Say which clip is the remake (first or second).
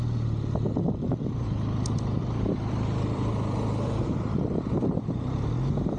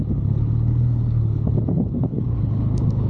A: second